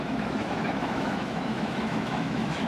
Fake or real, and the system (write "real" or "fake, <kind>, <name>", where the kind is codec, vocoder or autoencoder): fake, autoencoder, DAC-VAE